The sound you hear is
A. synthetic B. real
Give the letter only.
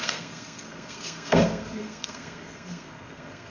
A